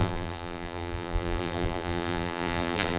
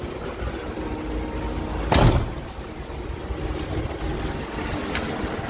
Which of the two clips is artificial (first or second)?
first